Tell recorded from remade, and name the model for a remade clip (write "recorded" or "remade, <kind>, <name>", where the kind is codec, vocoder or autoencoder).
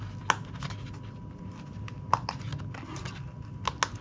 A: recorded